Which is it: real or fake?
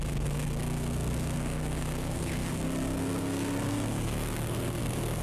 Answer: fake